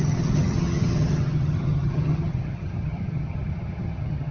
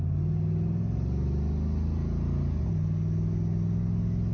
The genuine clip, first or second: second